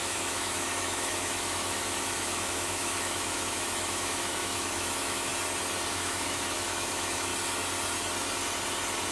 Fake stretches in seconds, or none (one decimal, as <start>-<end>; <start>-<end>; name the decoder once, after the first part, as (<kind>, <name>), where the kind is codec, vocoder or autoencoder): 0.0-5.3 (autoencoder, DAC-VAE); 5.9-7.3